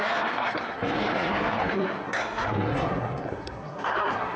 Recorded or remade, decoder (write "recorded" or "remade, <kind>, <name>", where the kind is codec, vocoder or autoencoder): remade, codec, SNAC